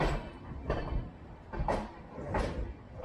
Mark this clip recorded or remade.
remade